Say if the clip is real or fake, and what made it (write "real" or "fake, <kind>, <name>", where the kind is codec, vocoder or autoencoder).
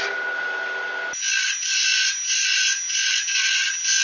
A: real